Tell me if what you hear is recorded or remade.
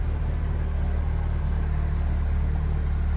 recorded